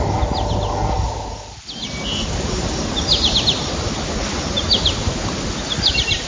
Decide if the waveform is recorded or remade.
recorded